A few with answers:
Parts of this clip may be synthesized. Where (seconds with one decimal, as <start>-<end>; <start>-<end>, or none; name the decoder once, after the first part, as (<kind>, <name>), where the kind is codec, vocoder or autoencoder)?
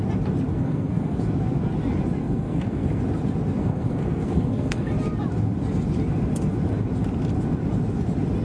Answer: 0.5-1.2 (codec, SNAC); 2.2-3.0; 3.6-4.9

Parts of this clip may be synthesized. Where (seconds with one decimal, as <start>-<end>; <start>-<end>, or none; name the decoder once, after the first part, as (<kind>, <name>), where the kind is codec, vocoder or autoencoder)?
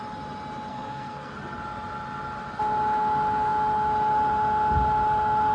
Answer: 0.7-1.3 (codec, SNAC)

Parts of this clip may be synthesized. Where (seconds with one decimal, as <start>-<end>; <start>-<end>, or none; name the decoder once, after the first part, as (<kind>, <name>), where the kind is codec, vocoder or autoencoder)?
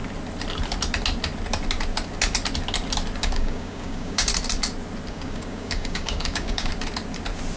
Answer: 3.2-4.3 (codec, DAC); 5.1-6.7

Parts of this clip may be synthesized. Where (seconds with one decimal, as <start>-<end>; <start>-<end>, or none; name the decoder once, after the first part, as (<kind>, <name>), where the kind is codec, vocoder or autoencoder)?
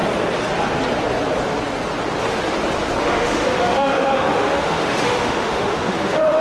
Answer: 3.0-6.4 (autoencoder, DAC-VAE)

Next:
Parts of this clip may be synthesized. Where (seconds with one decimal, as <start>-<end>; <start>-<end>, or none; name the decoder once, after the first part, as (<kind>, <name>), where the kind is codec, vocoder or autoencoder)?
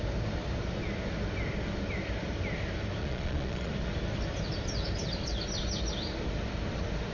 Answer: 3.0-3.7 (vocoder, Vocos)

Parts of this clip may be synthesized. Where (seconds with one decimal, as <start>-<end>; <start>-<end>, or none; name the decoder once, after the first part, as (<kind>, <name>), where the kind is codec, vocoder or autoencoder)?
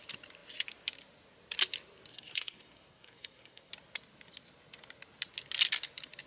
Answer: 2.1-3.7 (codec, SNAC)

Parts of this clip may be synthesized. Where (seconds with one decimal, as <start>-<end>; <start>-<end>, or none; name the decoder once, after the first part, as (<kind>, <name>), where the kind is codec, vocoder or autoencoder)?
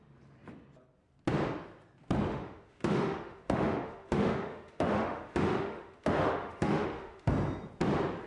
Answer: 2.3-7.3 (autoencoder, DAC-VAE)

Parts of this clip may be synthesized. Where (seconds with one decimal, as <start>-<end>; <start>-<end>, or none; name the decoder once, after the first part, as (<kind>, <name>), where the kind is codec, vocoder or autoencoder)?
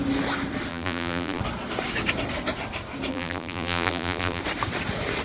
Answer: 0.7-1.4 (vocoder, BigVGAN v2); 3.1-4.4